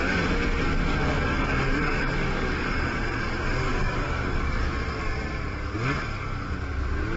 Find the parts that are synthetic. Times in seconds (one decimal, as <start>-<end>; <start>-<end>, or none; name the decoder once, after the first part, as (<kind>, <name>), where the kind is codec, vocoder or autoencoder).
0.9-3.3 (codec, DAC); 3.7-4.7

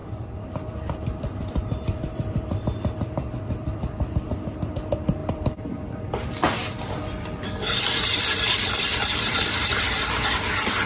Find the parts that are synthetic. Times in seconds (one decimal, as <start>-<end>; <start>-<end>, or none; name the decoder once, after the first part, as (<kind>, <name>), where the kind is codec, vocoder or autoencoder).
0.0-4.7 (vocoder, BigVGAN v2); 5.2-9.5